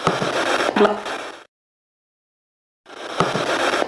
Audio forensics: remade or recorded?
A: recorded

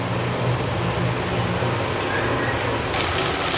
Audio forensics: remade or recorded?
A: recorded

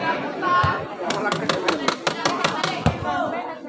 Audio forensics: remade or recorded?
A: recorded